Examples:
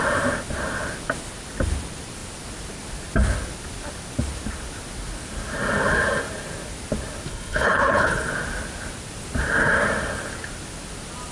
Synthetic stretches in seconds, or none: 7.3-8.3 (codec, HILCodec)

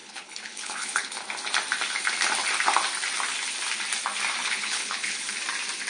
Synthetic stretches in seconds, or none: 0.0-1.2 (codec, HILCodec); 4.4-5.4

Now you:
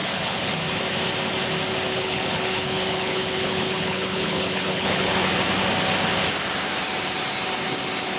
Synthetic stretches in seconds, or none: 0.0-0.5 (codec, HILCodec); 1.9-5.3

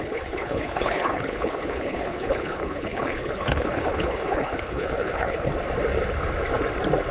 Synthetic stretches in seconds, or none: 0.0-5.5 (codec, HILCodec)

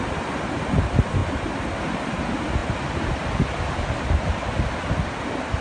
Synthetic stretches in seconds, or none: none

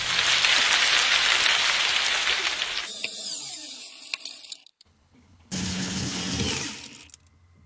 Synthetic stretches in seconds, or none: 4.7-6.2 (codec, HILCodec)